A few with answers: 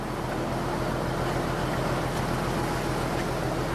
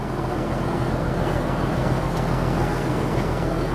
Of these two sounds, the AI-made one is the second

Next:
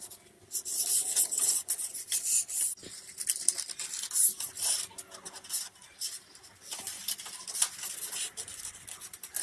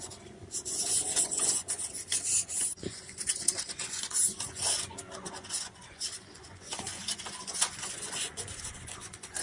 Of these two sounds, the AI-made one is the second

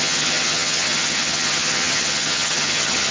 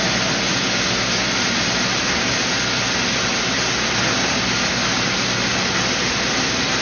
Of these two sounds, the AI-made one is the first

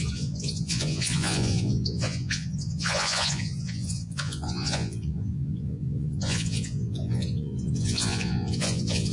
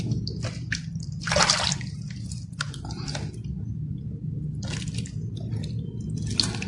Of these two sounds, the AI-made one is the first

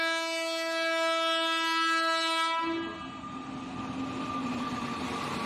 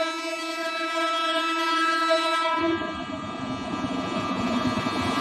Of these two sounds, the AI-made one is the second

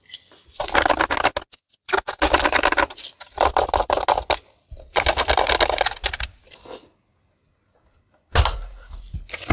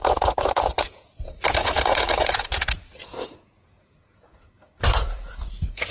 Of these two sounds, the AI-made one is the second